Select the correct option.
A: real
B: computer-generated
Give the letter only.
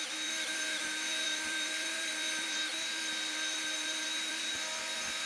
B